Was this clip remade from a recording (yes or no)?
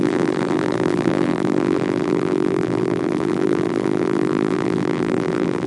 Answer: yes